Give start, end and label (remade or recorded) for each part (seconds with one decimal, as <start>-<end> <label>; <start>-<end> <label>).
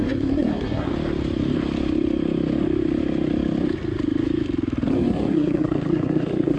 0.0-0.9 remade; 0.9-4.9 recorded; 4.9-6.6 remade